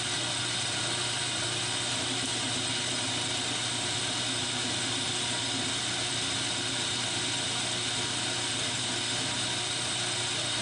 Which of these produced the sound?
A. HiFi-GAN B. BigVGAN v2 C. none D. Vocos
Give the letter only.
C